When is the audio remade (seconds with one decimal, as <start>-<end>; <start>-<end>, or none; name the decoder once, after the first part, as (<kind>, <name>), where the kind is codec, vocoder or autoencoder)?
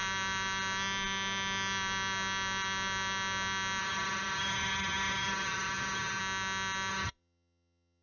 3.8-6.2 (vocoder, HiFi-GAN); 6.9-8.0